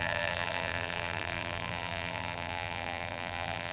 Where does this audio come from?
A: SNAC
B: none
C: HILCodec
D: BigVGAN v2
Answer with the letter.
D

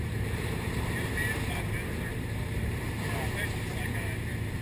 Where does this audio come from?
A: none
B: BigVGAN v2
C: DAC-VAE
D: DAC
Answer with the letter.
B